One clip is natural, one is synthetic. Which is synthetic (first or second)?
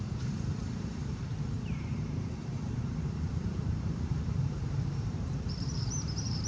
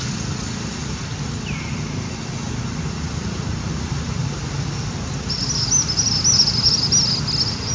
first